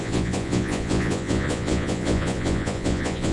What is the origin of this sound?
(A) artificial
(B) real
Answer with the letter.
A